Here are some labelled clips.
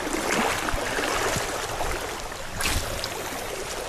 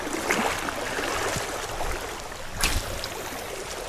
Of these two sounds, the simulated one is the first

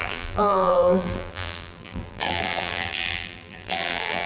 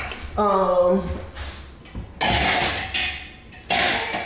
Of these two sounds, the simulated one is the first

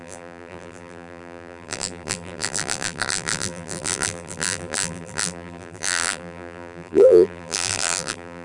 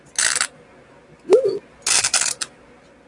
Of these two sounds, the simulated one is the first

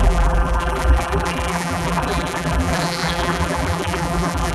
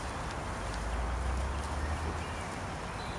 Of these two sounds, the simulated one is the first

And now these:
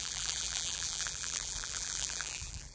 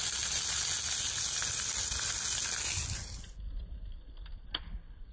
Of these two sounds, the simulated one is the first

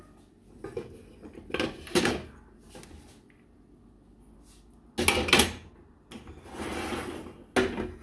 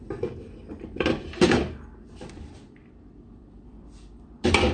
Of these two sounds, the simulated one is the second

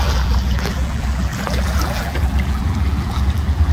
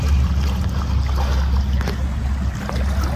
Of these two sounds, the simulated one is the first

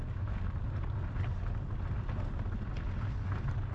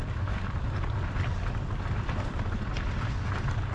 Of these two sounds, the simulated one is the second